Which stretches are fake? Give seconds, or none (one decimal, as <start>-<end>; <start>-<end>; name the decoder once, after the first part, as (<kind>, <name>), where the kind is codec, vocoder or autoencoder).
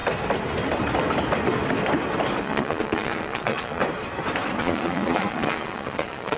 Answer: 2.4-3.8 (vocoder, Vocos); 4.6-6.4